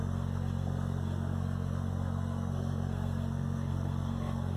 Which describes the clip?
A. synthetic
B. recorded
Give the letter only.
A